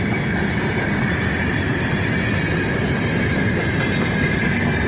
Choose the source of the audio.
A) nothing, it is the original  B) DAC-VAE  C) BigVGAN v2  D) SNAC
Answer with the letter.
C